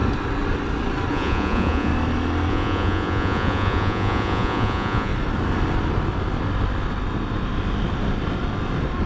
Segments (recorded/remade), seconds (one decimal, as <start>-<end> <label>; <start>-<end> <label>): 0.0-1.1 recorded; 1.1-1.9 remade; 1.9-2.5 recorded; 2.5-5.1 remade; 5.1-9.1 recorded